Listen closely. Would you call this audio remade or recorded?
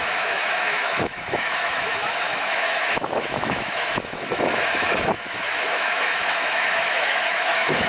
remade